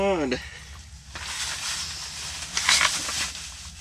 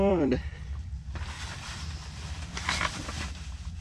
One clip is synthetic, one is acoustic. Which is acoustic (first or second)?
first